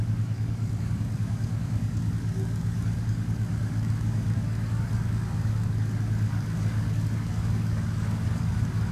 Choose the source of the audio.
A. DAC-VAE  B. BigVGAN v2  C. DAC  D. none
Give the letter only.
C